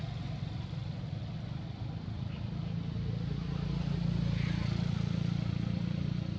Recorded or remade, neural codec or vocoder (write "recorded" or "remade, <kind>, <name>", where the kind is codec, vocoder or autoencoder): recorded